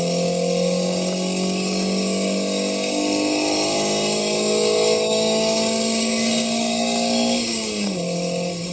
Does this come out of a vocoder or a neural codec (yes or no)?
yes